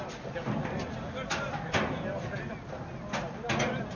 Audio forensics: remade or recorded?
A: recorded